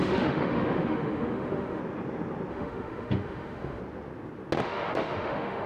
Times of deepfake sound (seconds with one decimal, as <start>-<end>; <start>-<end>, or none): 0.0-1.8; 2.5-3.8; 4.6-5.7